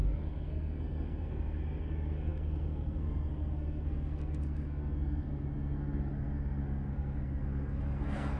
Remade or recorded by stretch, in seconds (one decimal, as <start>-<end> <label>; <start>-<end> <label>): 0.0-8.4 remade